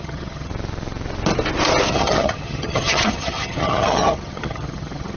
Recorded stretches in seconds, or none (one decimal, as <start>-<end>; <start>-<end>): 0.5-1.9